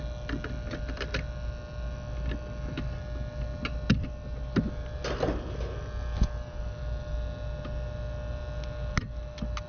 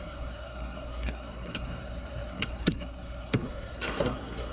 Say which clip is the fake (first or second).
second